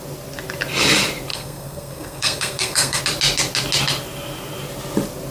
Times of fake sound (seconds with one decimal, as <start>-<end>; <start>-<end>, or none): 1.3-3.0